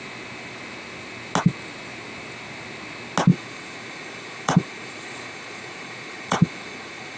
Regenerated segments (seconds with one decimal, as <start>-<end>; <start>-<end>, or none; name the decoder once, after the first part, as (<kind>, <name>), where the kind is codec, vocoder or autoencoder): 3.3-7.2 (vocoder, Vocos)